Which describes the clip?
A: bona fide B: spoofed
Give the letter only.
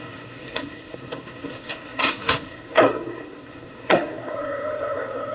B